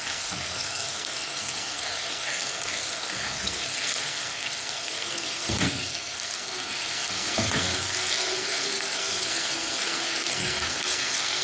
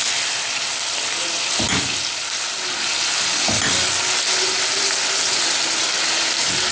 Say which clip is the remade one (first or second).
first